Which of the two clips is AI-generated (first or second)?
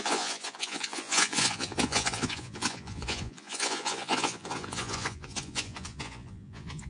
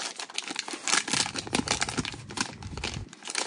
first